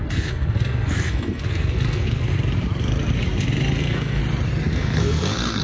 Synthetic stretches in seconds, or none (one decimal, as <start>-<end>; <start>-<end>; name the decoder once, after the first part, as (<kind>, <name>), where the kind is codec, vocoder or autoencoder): 0.0-2.3 (codec, SNAC); 3.8-4.2; 4.7-5.6